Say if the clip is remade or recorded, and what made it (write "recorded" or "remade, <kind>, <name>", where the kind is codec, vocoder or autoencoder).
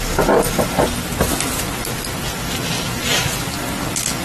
recorded